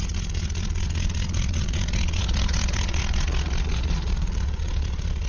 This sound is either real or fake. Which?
fake